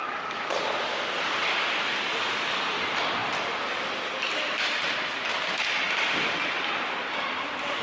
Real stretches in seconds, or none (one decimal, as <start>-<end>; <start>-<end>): 0.5-7.8